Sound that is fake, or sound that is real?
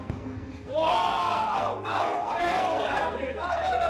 fake